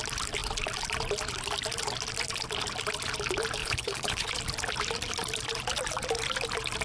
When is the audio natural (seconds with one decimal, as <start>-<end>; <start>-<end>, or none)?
0.0-3.6; 4.3-6.8